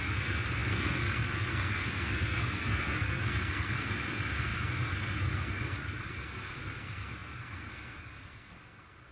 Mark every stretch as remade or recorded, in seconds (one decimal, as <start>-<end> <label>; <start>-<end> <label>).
0.0-9.1 remade